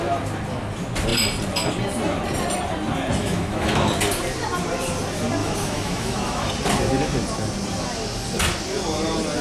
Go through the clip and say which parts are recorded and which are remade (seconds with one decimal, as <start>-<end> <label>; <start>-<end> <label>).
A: 0.0-3.2 recorded; 3.2-3.9 remade; 3.9-5.4 recorded; 5.4-6.5 remade; 6.5-9.4 recorded

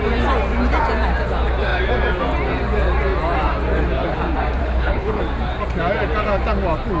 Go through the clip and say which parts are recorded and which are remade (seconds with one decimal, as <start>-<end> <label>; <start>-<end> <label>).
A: 0.0-4.6 recorded; 4.6-5.2 remade; 5.2-7.0 recorded